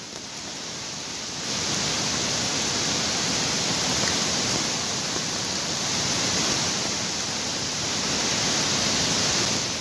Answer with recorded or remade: recorded